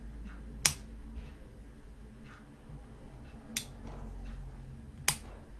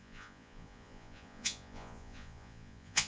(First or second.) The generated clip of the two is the second